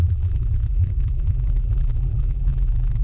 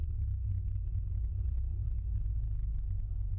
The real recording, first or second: second